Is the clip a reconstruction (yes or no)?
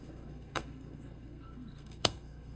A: yes